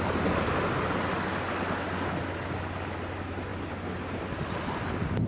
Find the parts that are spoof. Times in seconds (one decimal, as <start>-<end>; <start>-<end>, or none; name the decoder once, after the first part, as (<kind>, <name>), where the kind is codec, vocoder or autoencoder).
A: none